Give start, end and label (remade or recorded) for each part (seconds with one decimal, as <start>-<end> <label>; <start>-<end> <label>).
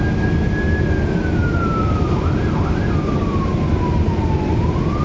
0.0-1.4 recorded; 1.4-4.4 remade; 4.4-5.0 recorded